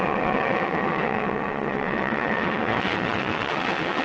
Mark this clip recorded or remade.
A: remade